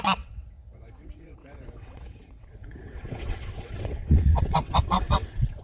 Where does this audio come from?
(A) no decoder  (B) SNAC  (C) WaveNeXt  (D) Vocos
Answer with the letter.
C